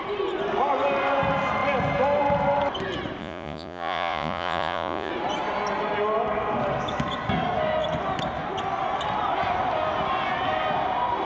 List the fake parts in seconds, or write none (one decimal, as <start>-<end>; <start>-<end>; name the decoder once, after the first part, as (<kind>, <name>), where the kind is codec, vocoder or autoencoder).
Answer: 3.2-5.1 (vocoder, Vocos)